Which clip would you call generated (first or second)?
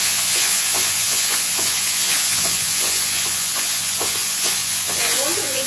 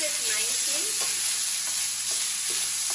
first